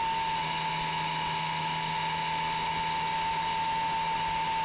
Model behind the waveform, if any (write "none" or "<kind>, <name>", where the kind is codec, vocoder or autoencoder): none